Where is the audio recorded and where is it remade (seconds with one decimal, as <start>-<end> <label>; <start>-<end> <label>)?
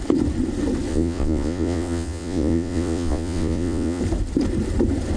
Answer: 0.0-0.9 recorded; 0.9-4.0 remade; 4.0-5.2 recorded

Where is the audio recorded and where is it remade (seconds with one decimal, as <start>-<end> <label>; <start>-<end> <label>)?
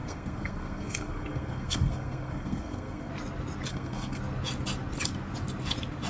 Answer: 0.0-3.1 remade; 3.1-3.7 recorded; 3.7-4.2 remade; 4.2-6.1 recorded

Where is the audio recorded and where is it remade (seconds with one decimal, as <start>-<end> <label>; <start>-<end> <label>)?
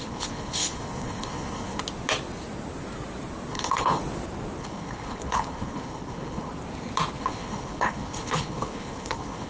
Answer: 0.0-1.8 remade; 1.8-3.5 recorded; 3.5-4.0 remade; 4.0-4.6 recorded; 4.6-6.5 remade; 6.5-7.2 recorded; 7.2-9.5 remade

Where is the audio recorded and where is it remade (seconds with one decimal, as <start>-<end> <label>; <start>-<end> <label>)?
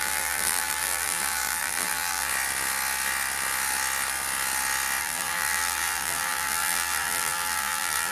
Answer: 0.0-2.3 remade; 2.3-5.0 recorded; 5.0-8.1 remade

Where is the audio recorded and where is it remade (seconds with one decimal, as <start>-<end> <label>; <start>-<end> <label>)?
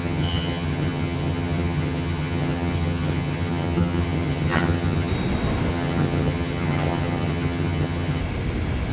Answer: 0.0-5.1 remade; 5.1-5.7 recorded; 5.7-8.2 remade; 8.2-8.9 recorded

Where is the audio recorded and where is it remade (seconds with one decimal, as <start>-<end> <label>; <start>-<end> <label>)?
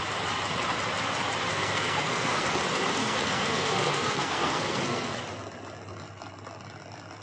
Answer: 0.0-1.5 recorded; 1.5-2.5 remade; 2.5-3.0 recorded; 3.0-5.2 remade; 5.2-7.2 recorded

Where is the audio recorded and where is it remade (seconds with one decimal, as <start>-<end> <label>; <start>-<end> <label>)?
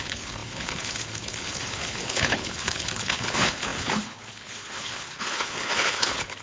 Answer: 0.0-6.4 remade